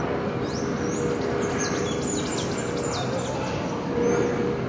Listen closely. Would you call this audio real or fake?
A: real